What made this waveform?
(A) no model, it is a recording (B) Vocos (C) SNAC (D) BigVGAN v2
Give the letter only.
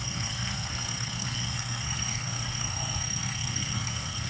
C